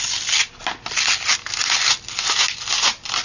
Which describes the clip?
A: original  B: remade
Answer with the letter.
A